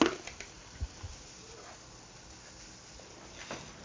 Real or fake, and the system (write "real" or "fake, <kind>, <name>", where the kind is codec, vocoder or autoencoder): real